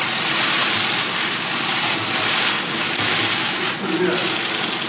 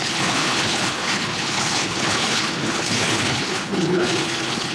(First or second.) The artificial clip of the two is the second